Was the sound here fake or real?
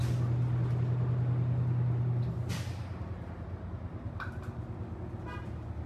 real